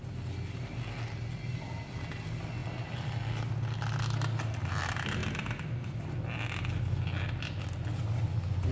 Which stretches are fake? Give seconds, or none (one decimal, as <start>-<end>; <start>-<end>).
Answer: none